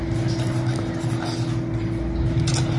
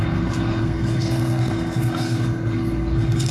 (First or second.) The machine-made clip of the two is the second